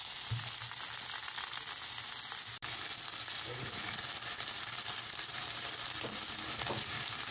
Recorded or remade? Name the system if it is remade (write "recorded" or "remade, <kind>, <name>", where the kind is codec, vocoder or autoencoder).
recorded